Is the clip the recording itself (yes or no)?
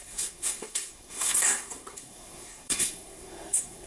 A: no